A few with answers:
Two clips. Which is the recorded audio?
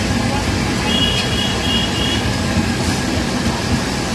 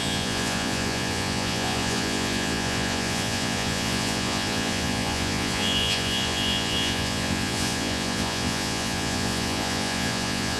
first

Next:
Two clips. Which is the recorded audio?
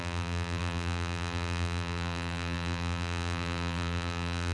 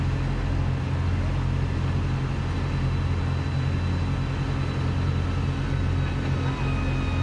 second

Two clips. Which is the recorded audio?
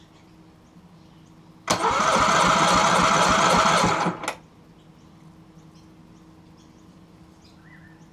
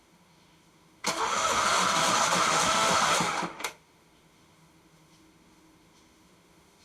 first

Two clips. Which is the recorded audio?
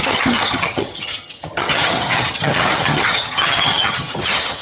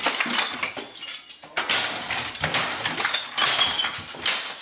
second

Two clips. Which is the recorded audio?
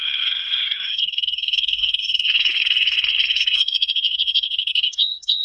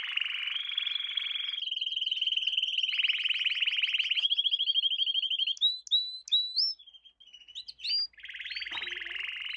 second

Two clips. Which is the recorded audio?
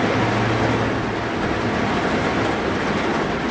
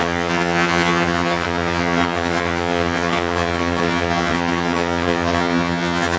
first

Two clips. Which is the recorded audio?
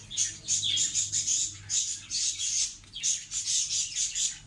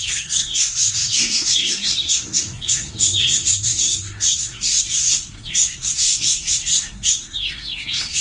first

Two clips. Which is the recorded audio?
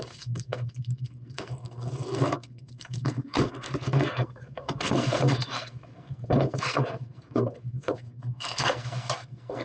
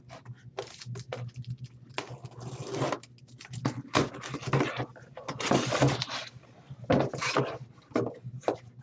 second